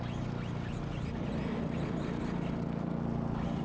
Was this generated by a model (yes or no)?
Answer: no